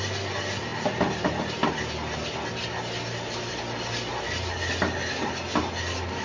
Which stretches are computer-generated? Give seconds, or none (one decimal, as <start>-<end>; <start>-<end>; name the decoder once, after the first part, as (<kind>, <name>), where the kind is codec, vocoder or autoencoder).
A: none